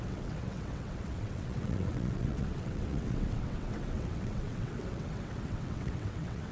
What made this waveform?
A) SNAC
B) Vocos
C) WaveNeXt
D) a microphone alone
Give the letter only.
C